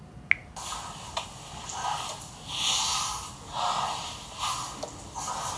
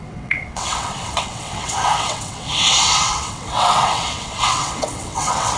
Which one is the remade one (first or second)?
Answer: second